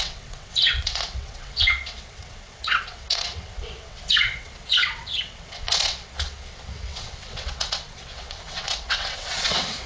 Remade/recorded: remade